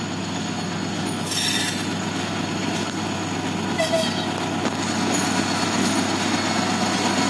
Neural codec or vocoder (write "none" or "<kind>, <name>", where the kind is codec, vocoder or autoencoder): none